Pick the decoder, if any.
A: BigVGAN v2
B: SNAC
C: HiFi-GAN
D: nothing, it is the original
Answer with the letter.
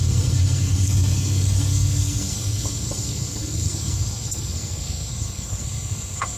B